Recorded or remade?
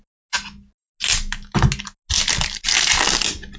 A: recorded